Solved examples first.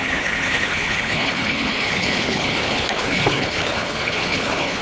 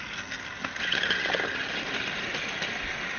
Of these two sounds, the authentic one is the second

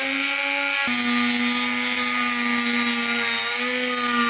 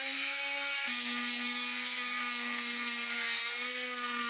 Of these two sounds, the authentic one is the first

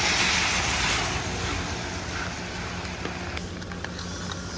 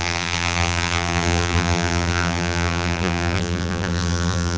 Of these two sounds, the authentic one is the first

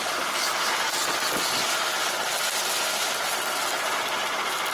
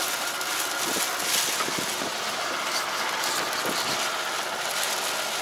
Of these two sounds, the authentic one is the second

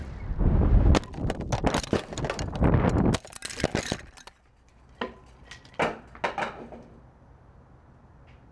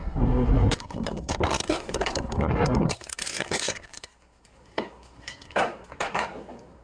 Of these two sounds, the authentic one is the first